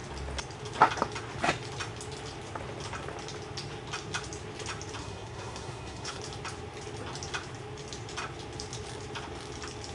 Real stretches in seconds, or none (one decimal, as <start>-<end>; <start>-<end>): 0.0-5.0; 6.2-9.9